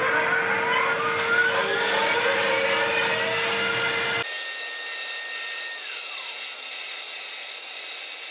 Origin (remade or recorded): recorded